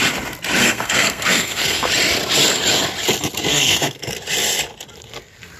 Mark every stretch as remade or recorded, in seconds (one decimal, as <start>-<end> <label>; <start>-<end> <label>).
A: 0.0-0.6 recorded; 0.6-1.9 remade; 1.9-3.5 recorded; 3.5-4.1 remade; 4.1-5.6 recorded